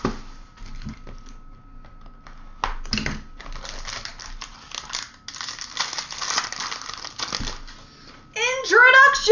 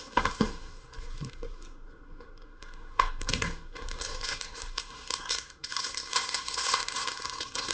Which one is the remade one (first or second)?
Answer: second